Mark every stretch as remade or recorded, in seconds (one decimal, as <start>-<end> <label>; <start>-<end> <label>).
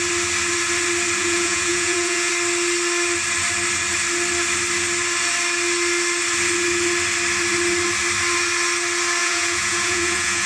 0.0-1.2 recorded; 1.2-2.3 remade; 2.3-9.2 recorded; 9.2-10.5 remade